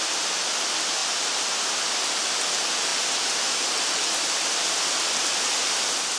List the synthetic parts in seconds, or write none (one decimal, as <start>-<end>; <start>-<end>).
none